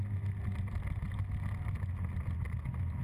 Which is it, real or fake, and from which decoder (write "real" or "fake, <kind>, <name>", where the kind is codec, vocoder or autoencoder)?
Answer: real